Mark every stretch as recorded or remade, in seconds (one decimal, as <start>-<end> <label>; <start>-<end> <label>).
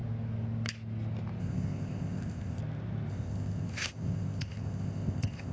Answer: 0.0-1.4 recorded; 1.4-2.6 remade; 2.6-3.1 recorded; 3.1-5.5 remade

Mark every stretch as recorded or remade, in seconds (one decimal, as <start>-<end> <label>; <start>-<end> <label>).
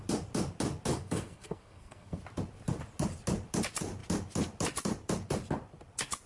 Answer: 0.0-0.9 recorded; 0.9-2.2 remade; 2.2-6.3 recorded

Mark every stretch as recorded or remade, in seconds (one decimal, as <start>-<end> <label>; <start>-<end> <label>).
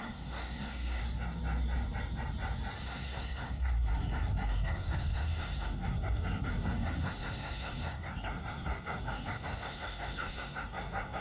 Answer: 0.0-1.0 remade; 1.0-2.8 recorded; 2.8-11.2 remade